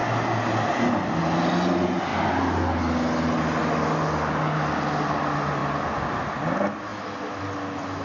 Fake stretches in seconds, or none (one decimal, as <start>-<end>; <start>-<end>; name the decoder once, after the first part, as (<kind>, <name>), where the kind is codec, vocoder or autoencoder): none